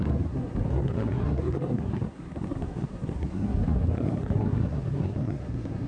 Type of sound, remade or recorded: remade